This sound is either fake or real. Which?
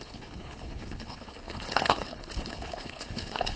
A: fake